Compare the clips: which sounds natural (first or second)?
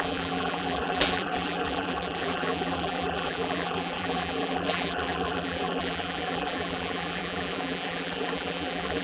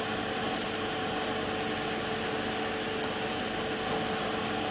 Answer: second